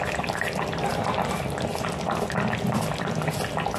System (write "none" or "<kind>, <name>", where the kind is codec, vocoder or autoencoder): none